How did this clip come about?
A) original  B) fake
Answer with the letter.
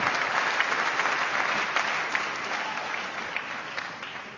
A